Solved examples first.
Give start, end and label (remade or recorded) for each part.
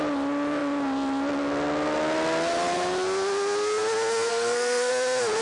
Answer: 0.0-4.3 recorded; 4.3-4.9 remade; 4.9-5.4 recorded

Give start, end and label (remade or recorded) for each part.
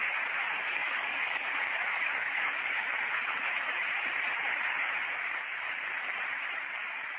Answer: 0.0-0.8 recorded; 0.8-1.5 remade; 1.5-2.2 recorded; 2.2-2.8 remade; 2.8-7.2 recorded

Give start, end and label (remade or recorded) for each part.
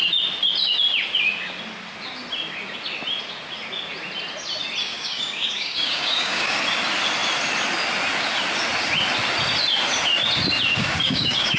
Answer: 0.0-4.8 recorded; 4.8-6.6 remade; 6.6-10.7 recorded; 10.7-11.6 remade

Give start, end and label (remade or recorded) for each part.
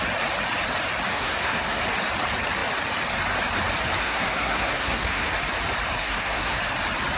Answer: 0.0-1.1 recorded; 1.1-1.8 remade; 1.8-4.0 recorded; 4.0-5.3 remade; 5.3-6.0 recorded; 6.0-6.6 remade; 6.6-7.2 recorded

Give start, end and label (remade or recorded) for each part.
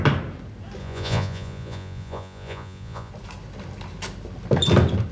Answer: 0.0-0.8 recorded; 0.8-3.1 remade; 3.1-5.1 recorded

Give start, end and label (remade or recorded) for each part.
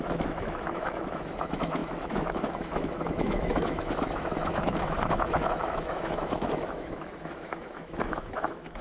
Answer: 0.0-8.8 remade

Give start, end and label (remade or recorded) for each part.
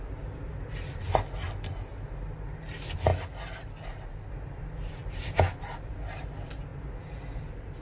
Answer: 0.0-7.8 recorded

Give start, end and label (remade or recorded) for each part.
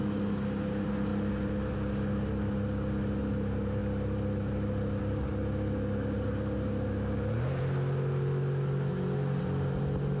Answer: 0.0-10.2 recorded